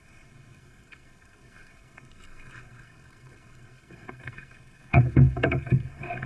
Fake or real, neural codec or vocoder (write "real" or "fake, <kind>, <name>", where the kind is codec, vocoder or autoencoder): fake, codec, SNAC